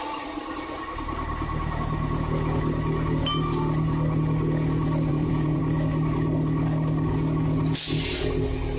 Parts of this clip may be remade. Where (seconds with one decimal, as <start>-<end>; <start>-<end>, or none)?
5.1-5.6